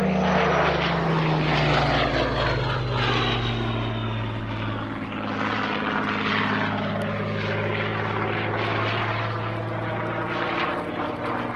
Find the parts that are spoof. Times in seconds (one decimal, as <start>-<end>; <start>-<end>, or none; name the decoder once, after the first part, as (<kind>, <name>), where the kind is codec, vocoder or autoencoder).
none